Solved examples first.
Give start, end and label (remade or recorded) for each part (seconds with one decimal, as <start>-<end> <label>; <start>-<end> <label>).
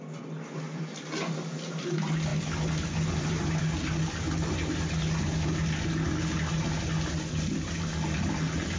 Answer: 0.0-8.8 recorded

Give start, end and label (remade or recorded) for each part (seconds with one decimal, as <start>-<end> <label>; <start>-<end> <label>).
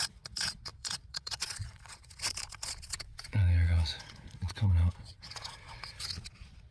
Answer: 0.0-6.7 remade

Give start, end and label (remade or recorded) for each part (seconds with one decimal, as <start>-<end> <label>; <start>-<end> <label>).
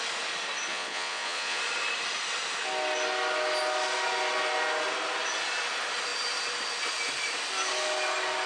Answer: 0.0-0.7 recorded; 0.7-1.6 remade; 1.6-8.5 recorded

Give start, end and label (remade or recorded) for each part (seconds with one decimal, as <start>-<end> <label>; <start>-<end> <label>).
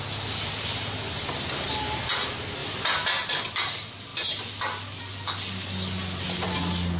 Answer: 0.0-7.0 recorded